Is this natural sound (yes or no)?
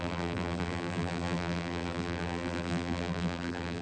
no